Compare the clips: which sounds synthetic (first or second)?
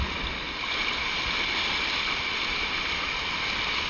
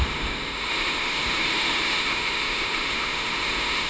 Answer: second